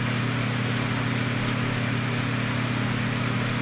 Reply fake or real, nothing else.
real